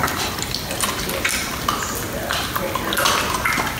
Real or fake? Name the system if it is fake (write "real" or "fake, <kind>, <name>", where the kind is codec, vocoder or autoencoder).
real